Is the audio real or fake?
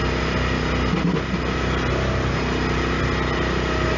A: real